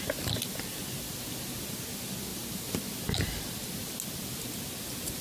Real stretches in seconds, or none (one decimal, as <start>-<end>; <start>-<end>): 0.0-2.3; 2.8-5.2